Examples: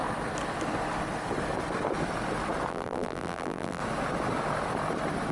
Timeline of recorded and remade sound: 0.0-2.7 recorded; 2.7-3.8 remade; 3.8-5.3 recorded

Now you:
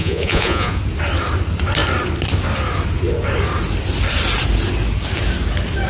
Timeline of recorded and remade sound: 0.0-0.8 remade; 0.8-5.9 recorded

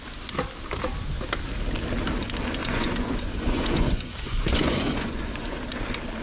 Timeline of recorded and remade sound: 0.0-2.6 recorded; 2.6-5.6 remade; 5.6-6.2 recorded

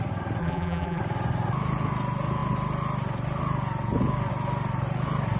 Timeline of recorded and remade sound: 0.0-0.4 recorded; 0.4-1.0 remade; 1.0-5.4 recorded

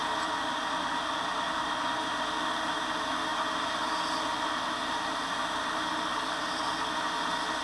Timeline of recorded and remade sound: 0.0-7.6 recorded

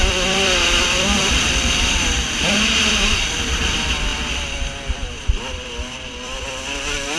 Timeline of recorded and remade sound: 0.0-4.1 remade; 4.1-4.9 recorded; 4.9-7.2 remade

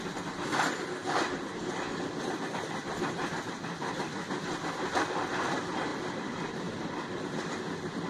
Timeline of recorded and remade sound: 0.0-1.0 recorded; 1.0-1.7 remade; 1.7-5.9 recorded; 5.9-7.2 remade; 7.2-8.1 recorded

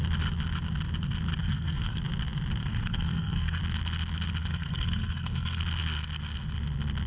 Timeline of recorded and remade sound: 0.0-1.4 recorded; 1.4-2.0 remade; 2.0-2.6 recorded; 2.6-3.6 remade; 3.6-4.4 recorded; 4.4-5.6 remade; 5.6-7.1 recorded